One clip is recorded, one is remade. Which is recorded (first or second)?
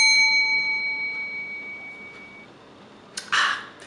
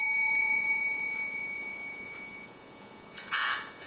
first